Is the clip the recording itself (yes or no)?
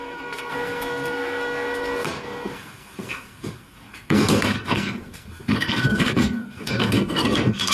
no